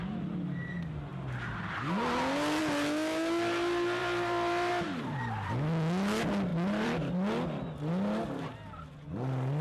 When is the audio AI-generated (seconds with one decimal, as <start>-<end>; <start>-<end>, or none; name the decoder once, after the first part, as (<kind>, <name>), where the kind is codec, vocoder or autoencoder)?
4.0-4.7 (vocoder, BigVGAN v2); 6.5-7.1

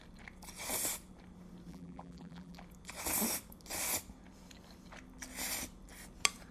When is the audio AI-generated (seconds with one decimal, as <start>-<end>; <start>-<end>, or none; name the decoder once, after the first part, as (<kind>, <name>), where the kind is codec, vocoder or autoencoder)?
1.7-2.6 (vocoder, BigVGAN v2)

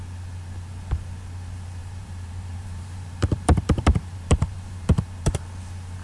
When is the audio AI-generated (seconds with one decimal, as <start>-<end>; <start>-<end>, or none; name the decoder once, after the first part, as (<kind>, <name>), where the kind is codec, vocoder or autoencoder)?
1.8-5.4 (vocoder, BigVGAN v2)

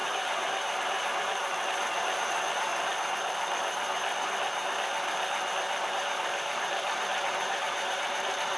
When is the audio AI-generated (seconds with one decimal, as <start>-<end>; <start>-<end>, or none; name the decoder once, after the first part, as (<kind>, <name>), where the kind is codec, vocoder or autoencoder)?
0.0-2.7 (vocoder, BigVGAN v2); 5.9-8.6

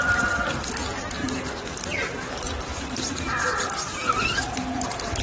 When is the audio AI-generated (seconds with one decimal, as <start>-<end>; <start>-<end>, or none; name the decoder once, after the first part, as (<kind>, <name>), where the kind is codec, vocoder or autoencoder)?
0.0-3.4 (vocoder, BigVGAN v2)

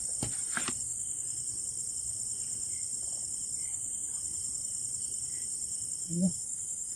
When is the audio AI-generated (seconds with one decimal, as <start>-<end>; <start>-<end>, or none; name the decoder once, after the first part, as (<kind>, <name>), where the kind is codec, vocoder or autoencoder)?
0.4-1.9 (vocoder, BigVGAN v2); 2.9-7.0

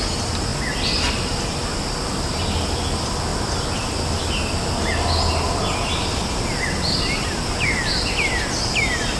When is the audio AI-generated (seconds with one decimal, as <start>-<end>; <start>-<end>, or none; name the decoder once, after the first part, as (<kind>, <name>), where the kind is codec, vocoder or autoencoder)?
0.0-0.5 (vocoder, BigVGAN v2); 1.1-3.3; 8.1-9.2